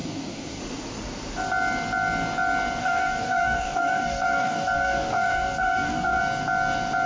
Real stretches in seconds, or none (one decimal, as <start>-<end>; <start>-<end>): 0.6-2.8; 6.2-7.1